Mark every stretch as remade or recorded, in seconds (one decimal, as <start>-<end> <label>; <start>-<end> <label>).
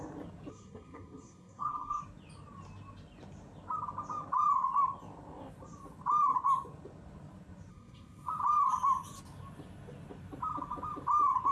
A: 0.0-0.5 recorded; 0.5-2.0 remade; 2.0-7.7 recorded; 7.7-8.3 remade; 8.3-11.5 recorded